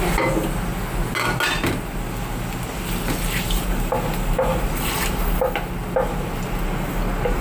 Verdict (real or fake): real